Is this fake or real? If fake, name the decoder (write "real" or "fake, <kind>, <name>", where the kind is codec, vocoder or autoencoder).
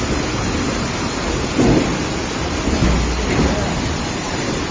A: real